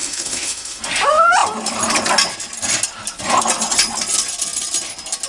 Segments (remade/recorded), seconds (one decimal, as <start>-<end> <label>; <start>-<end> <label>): 0.0-0.8 remade; 0.8-5.3 recorded